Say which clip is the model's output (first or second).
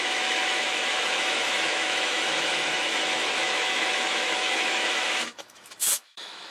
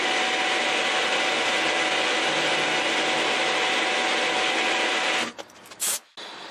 first